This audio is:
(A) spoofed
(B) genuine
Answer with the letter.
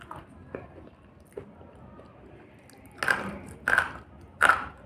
B